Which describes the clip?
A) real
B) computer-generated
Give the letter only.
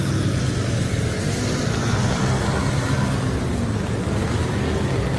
A